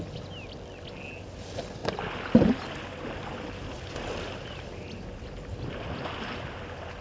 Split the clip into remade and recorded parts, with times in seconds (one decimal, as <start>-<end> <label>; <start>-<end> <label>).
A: 0.0-7.0 recorded